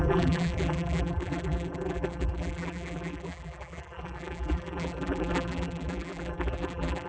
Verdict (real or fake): fake